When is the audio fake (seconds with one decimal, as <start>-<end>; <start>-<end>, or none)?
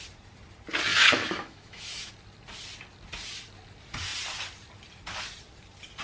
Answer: 0.9-2.1